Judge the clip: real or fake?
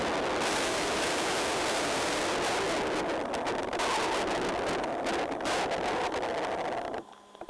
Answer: real